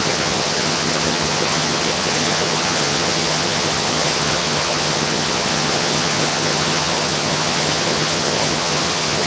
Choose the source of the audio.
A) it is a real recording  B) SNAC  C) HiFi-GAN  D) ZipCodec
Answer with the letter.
C